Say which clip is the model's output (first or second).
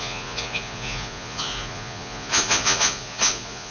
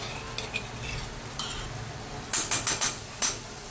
first